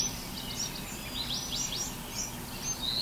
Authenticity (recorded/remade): recorded